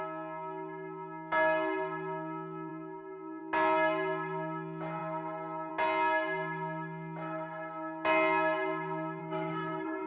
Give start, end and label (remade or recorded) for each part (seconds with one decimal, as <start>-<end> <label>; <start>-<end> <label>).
0.0-9.2 recorded; 9.2-10.1 remade